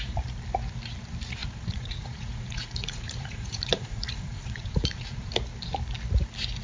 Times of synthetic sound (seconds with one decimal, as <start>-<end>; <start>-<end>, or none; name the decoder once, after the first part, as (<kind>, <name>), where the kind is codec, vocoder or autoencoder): 1.4-5.3 (vocoder, Vocos)